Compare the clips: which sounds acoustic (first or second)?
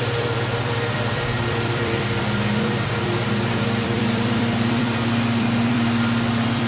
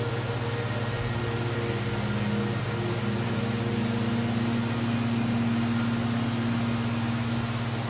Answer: second